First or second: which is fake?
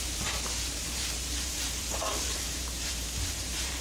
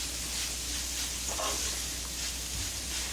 first